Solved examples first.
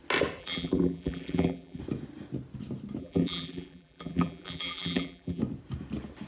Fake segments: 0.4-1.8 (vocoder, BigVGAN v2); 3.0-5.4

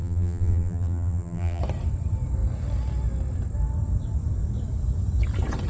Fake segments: 0.0-1.6 (vocoder, BigVGAN v2)

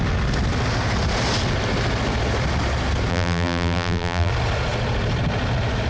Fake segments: 3.1-4.3 (vocoder, BigVGAN v2)

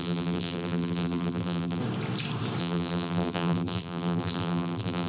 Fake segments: 0.0-1.8 (vocoder, BigVGAN v2); 2.6-5.1

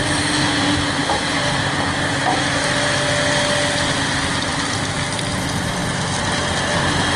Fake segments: none

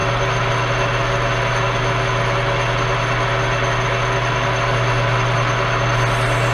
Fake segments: none